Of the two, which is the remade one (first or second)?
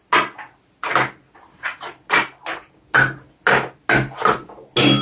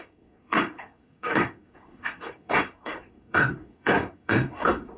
second